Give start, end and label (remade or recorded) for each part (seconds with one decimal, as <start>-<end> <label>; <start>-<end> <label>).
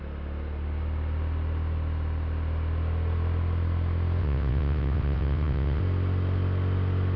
0.0-4.2 recorded; 4.2-5.8 remade; 5.8-7.2 recorded